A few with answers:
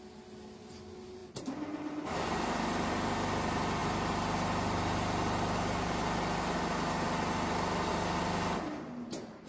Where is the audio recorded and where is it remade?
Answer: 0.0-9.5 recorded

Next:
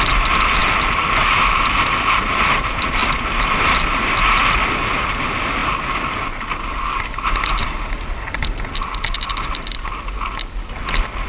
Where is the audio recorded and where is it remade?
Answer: 0.0-11.3 recorded